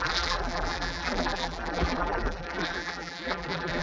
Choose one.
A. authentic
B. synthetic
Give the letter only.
B